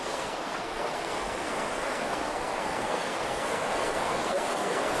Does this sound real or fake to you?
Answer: fake